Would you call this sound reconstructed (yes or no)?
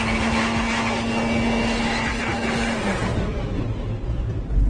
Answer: no